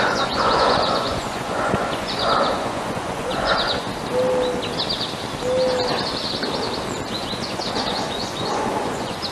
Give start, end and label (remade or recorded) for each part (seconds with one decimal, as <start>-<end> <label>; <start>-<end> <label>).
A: 0.0-3.9 remade; 3.9-7.1 recorded; 7.1-9.3 remade